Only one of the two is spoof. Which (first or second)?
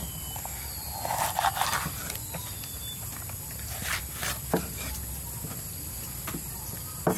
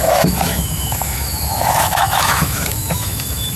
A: second